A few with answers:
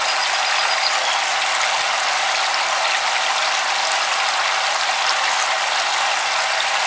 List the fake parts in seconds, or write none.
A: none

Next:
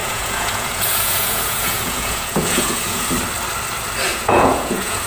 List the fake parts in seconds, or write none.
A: 0.0-3.1; 4.1-5.1

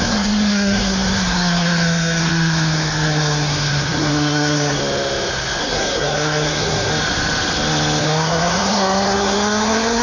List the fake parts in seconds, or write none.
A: 0.0-4.8; 5.6-6.9; 8.0-10.0